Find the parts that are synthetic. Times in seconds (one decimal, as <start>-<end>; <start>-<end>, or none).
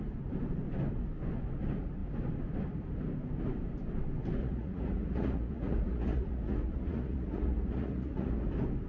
4.4-8.5